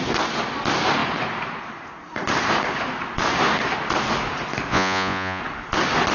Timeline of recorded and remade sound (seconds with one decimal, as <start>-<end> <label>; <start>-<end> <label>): 0.0-4.7 recorded; 4.7-5.4 remade; 5.4-6.1 recorded